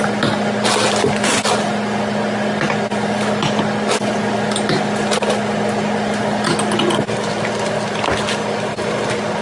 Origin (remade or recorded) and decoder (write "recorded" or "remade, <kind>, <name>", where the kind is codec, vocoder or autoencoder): recorded